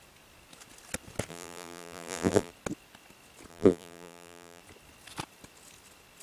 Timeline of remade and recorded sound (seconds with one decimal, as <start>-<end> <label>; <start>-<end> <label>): 0.0-1.3 recorded; 1.3-2.5 remade; 2.5-3.5 recorded; 3.5-4.6 remade; 4.6-6.2 recorded